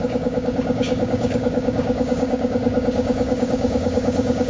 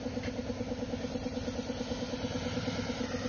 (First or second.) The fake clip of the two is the first